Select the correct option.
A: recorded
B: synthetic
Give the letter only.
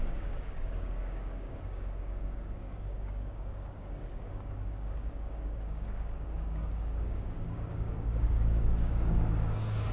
B